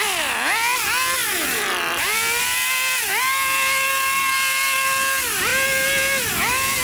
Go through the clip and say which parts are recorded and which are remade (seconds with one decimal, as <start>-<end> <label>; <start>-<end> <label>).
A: 0.0-6.8 recorded